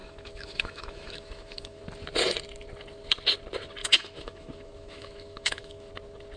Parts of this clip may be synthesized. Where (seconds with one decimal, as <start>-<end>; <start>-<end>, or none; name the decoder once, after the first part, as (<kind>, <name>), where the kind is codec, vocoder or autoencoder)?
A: 0.0-1.8 (autoencoder, DAC-VAE); 3.8-5.9